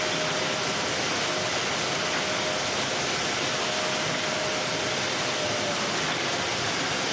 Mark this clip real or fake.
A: real